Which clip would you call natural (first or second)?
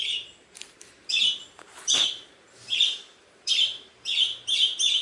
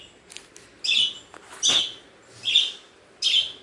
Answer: second